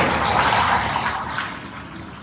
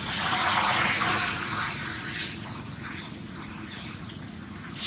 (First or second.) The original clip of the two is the first